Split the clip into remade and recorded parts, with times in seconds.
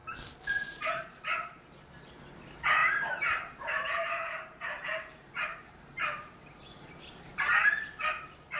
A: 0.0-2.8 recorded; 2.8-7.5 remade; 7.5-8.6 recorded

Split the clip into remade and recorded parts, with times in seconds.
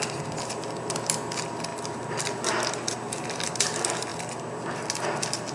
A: 0.0-5.5 recorded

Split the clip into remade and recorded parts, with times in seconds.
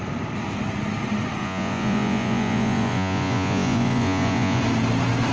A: 0.0-1.4 recorded; 1.4-4.6 remade; 4.6-5.3 recorded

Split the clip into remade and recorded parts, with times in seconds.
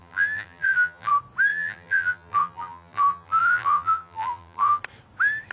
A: 0.0-1.1 remade; 1.1-1.5 recorded; 1.5-4.8 remade; 4.8-5.5 recorded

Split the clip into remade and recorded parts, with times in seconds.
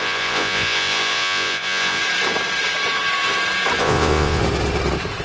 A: 0.0-2.0 remade; 2.0-3.8 recorded; 3.8-4.4 remade; 4.4-5.2 recorded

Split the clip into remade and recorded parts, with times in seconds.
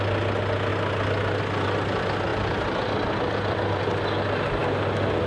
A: 0.0-2.3 recorded; 2.3-3.8 remade; 3.8-5.3 recorded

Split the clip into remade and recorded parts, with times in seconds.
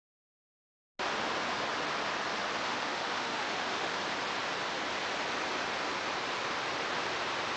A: 0.0-2.6 recorded; 2.6-4.0 remade; 4.0-7.6 recorded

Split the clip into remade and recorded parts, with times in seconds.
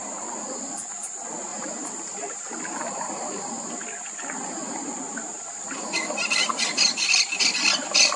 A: 0.0-1.5 recorded; 1.5-2.5 remade; 2.5-8.2 recorded